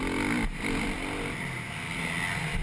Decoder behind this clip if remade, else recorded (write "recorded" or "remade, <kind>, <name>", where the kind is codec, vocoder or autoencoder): recorded